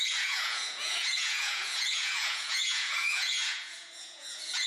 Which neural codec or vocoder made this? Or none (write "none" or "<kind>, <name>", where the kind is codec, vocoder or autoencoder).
vocoder, Vocos